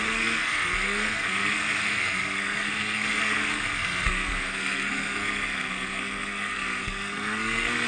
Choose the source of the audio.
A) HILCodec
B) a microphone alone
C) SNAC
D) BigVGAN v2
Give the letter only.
C